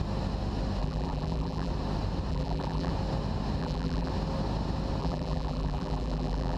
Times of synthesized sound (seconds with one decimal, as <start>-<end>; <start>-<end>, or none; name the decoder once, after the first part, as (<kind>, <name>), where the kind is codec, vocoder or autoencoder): 0.8-1.7 (vocoder, BigVGAN v2); 2.3-2.9; 3.6-4.1; 5.0-6.6